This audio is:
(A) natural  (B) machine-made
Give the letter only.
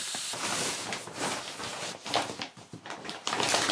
B